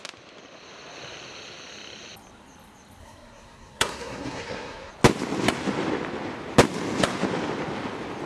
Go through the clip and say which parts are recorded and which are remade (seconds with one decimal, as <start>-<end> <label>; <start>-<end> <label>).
0.0-3.0 recorded; 3.0-4.9 remade; 4.9-8.3 recorded